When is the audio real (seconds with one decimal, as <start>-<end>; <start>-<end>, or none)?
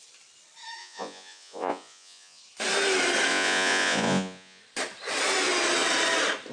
0.0-0.8; 2.4-3.3; 4.6-6.5